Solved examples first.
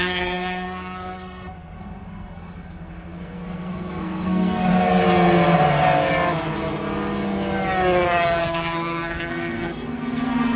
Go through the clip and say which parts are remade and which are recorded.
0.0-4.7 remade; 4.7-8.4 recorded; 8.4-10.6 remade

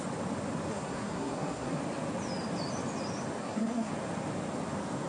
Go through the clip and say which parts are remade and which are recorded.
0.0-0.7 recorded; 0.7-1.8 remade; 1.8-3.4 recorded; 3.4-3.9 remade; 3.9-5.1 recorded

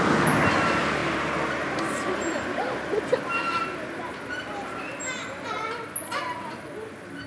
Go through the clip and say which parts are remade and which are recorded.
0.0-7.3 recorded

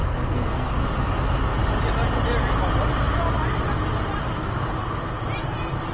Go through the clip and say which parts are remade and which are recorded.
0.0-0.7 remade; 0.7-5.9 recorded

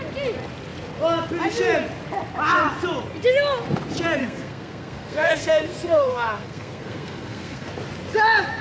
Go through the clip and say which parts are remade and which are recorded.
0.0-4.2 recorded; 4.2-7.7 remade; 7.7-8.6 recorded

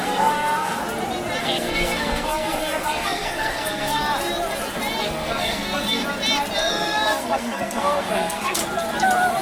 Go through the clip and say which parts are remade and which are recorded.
0.0-0.8 remade; 0.8-1.4 recorded; 1.4-4.0 remade; 4.0-5.0 recorded; 5.0-6.0 remade; 6.0-6.6 recorded; 6.6-8.6 remade; 8.6-9.4 recorded

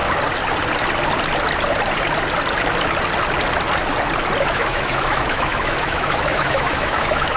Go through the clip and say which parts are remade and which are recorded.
0.0-4.4 recorded; 4.4-7.4 remade